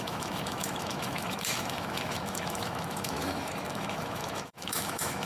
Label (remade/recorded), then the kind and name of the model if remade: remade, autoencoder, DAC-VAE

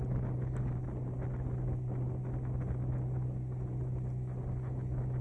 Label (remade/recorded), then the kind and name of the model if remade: recorded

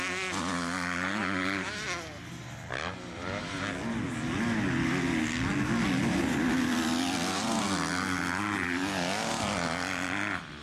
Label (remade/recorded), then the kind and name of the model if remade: recorded